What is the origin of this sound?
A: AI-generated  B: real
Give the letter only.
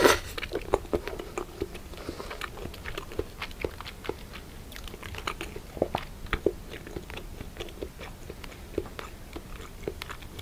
B